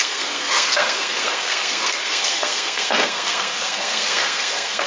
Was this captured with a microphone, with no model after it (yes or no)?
no